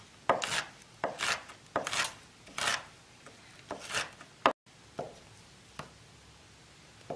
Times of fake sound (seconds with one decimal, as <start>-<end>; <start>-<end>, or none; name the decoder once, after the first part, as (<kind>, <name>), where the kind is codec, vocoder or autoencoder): none